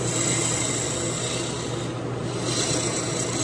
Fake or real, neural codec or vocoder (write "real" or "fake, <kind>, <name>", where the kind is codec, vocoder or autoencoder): real